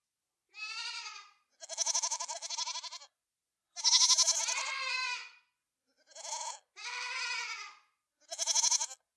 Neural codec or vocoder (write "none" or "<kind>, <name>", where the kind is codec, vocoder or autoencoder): none